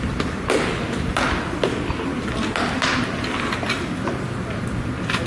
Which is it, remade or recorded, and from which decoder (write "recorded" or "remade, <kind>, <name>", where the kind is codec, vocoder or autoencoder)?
recorded